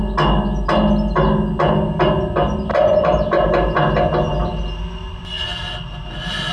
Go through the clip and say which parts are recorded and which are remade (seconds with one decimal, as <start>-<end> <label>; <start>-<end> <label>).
0.0-2.7 recorded; 2.7-3.5 remade; 3.5-6.5 recorded